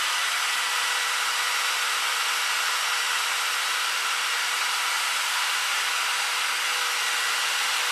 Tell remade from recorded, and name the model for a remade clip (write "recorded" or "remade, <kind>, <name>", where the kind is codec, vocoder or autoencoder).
recorded